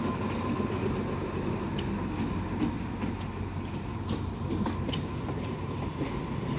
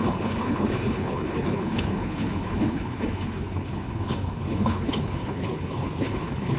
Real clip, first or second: first